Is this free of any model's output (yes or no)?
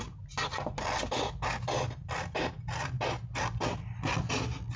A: yes